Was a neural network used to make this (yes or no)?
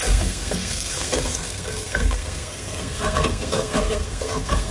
yes